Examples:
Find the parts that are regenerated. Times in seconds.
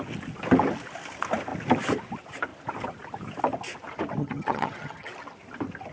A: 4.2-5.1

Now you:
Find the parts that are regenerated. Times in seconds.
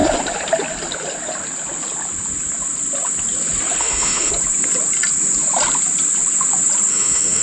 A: 3.8-4.3; 6.9-7.4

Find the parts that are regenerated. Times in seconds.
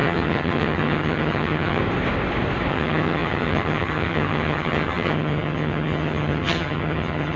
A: 0.0-1.8; 2.7-7.4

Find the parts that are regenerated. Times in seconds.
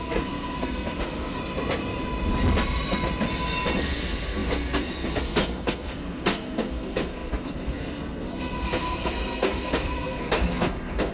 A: 0.0-1.4; 3.8-11.1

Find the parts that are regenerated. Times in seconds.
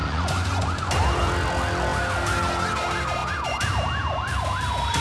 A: 0.0-0.9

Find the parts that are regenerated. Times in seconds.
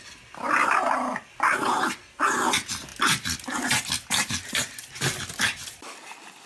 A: none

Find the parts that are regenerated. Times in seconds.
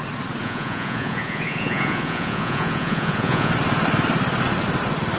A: 0.4-3.5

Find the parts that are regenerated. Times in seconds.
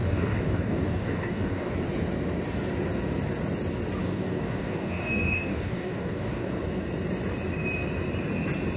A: 0.0-1.7; 4.0-6.5